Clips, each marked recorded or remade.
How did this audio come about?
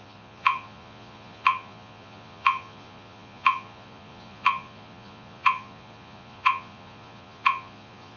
remade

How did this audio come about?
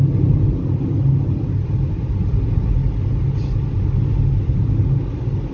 recorded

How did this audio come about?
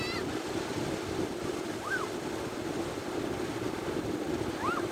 recorded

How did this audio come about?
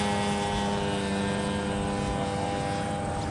recorded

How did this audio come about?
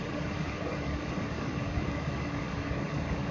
remade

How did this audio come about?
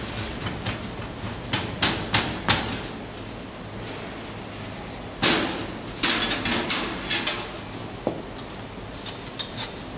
recorded